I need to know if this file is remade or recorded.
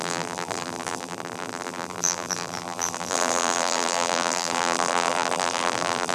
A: remade